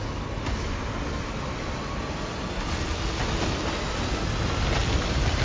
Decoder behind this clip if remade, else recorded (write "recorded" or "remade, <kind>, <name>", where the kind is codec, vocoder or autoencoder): recorded